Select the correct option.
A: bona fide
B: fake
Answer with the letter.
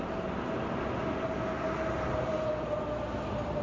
A